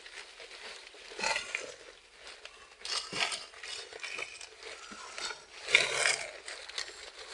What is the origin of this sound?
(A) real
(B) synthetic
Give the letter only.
A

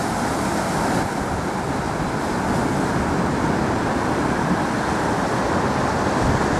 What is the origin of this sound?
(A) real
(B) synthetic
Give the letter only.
A